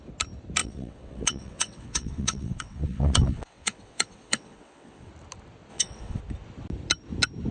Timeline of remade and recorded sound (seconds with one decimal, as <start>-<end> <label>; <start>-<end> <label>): 0.0-0.6 recorded; 0.6-5.1 remade; 5.1-5.7 recorded; 5.7-6.2 remade; 6.2-7.5 recorded

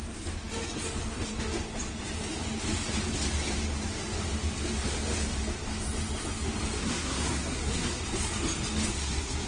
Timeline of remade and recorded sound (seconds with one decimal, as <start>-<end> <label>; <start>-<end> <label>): 0.0-6.8 recorded; 6.8-8.0 remade; 8.0-8.9 recorded; 8.9-9.5 remade

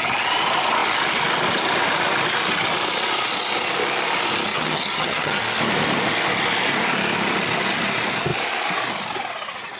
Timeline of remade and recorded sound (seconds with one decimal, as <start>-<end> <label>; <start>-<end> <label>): 0.0-4.5 recorded; 4.5-5.4 remade; 5.4-9.8 recorded

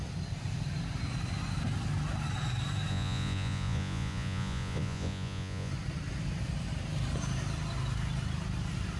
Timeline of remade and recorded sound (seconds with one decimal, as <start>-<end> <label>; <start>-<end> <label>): 0.0-2.9 recorded; 2.9-5.7 remade; 5.7-9.0 recorded

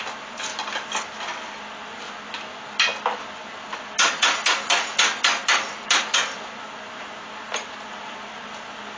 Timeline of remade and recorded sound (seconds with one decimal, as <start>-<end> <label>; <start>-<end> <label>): 0.0-9.0 recorded

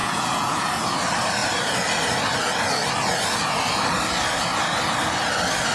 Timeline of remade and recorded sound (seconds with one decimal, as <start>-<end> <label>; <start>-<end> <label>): 0.0-0.7 remade; 0.7-5.7 recorded

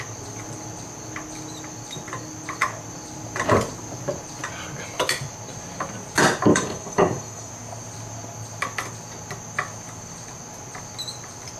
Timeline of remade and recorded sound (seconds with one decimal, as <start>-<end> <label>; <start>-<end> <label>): 0.0-6.5 recorded; 6.5-7.5 remade; 7.5-11.6 recorded

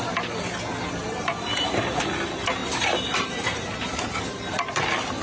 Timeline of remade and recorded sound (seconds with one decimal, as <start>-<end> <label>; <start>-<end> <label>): 0.0-1.0 recorded; 1.0-1.9 remade; 1.9-2.6 recorded; 2.6-4.0 remade; 4.0-5.2 recorded